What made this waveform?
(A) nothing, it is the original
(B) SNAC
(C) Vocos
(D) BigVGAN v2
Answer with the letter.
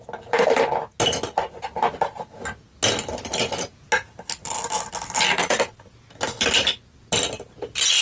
A